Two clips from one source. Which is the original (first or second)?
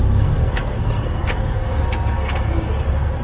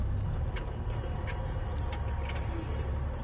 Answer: second